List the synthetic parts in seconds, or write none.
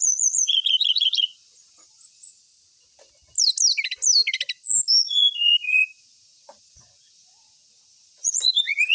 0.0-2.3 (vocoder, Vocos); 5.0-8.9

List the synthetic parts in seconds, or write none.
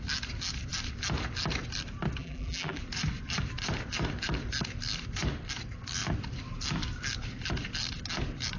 2.2-2.8 (vocoder, BigVGAN v2)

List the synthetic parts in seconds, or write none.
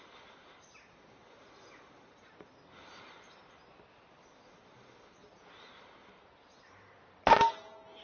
none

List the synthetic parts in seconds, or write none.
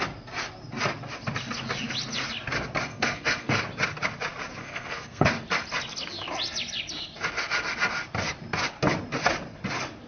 2.9-3.6 (codec, SNAC); 4.6-5.3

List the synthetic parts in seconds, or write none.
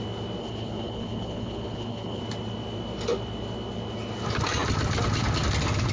0.4-2.2 (codec, HILCodec)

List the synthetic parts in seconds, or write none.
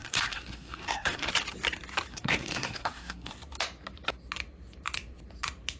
0.0-1.3 (codec, SNAC); 2.1-3.3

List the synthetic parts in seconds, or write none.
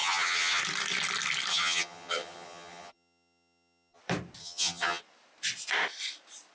0.0-0.6 (vocoder, HiFi-GAN); 1.5-4.0; 4.4-5.0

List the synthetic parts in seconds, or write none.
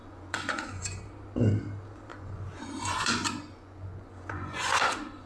0.0-1.0 (vocoder, Vocos); 2.1-5.3